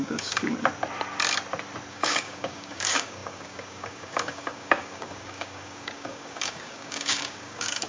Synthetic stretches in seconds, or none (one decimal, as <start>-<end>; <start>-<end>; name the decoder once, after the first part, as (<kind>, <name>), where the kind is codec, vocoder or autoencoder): 0.0-0.4 (codec, DAC); 1.9-7.9